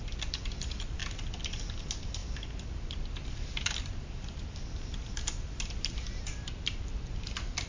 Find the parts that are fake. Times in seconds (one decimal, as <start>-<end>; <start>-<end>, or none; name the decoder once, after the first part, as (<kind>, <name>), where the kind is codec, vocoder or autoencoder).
none